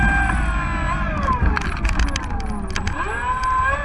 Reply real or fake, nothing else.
real